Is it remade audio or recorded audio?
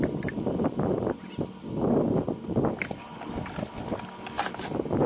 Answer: recorded